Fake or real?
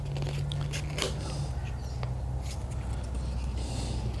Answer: real